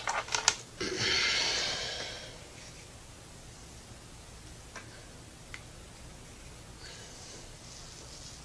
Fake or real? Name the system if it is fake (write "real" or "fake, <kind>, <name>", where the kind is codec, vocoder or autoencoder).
real